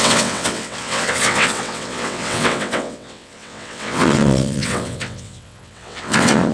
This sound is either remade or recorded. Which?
remade